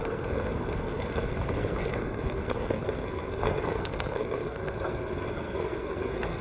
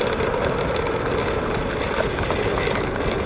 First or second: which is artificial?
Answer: first